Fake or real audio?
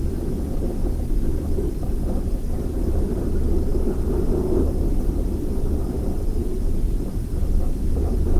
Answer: real